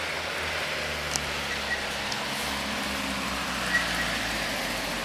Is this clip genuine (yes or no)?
yes